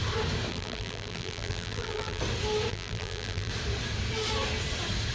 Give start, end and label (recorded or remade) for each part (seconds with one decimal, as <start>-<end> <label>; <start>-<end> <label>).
0.0-0.5 recorded; 0.5-2.2 remade; 2.2-2.7 recorded; 2.7-3.5 remade; 3.5-5.1 recorded